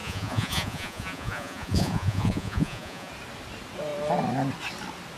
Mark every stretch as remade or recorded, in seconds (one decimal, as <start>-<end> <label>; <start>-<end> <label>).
0.0-3.1 remade; 3.1-5.2 recorded